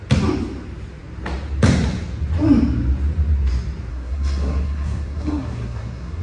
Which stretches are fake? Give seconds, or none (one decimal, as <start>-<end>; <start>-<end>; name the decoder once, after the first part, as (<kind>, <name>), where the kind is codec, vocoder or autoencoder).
3.9-6.2 (codec, SNAC)